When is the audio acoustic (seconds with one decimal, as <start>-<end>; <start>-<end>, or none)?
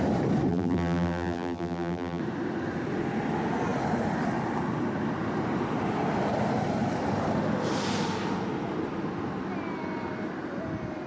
0.0-0.5; 2.2-11.1